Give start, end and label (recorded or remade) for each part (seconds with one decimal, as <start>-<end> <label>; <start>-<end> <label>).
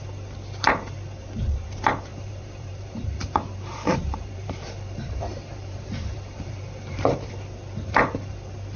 0.0-2.1 recorded; 2.1-7.3 remade; 7.3-8.8 recorded